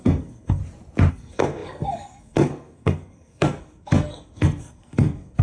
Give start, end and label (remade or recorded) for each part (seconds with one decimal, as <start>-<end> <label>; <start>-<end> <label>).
0.0-0.6 remade; 0.6-1.1 recorded; 1.1-5.4 remade